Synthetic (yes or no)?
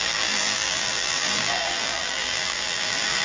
yes